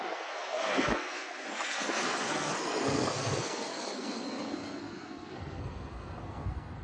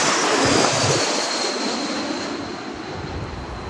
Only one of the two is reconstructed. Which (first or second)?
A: first